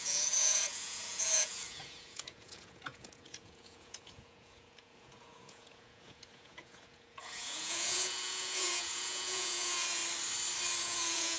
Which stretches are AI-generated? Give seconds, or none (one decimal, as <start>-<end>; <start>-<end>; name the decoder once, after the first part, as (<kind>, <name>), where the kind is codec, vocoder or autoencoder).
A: 0.0-10.0 (vocoder, Vocos); 10.8-11.4